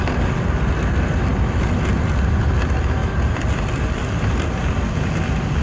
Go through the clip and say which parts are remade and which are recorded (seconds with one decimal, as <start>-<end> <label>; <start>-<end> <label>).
0.0-3.0 recorded; 3.0-3.7 remade; 3.7-5.6 recorded